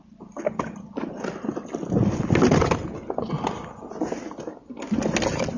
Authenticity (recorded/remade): recorded